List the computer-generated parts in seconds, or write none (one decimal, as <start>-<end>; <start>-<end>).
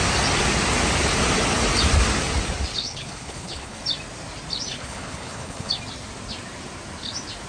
2.7-3.8; 4.8-5.7